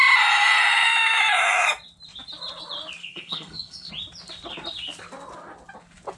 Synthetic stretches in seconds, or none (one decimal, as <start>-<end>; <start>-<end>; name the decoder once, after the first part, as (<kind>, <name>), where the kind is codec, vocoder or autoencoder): 3.0-3.9 (codec, SNAC)